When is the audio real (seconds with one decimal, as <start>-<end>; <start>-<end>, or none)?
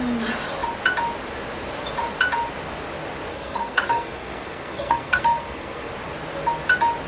0.0-3.3; 5.9-7.1